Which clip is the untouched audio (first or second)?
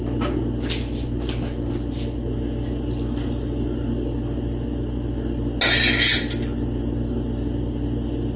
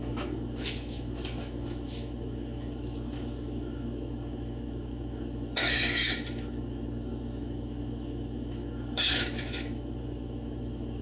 first